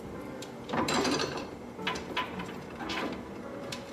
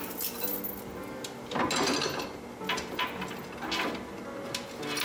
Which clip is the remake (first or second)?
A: first